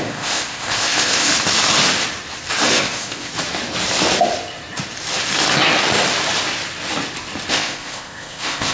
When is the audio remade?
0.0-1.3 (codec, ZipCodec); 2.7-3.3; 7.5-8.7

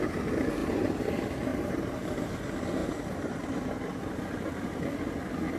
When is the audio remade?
0.6-1.1 (vocoder, BigVGAN v2); 1.5-2.2; 2.8-4.0

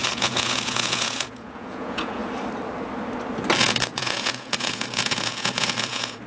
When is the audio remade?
0.0-2.2 (vocoder, Vocos); 3.6-6.3

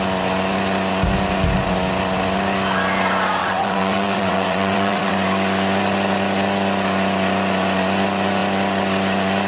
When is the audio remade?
3.4-5.1 (vocoder, WaveNeXt)

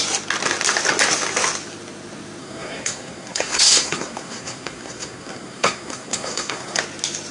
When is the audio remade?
2.4-6.8 (codec, SNAC)

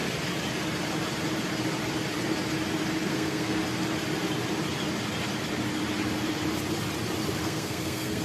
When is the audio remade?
3.1-3.6 (codec, SNAC); 7.4-8.2

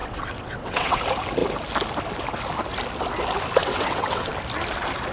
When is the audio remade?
0.0-1.0 (vocoder, WaveNeXt); 3.6-4.3

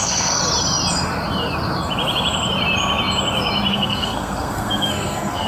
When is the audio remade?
0.0-0.4 (codec, SNAC); 3.7-5.5